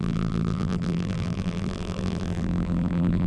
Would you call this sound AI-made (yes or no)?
yes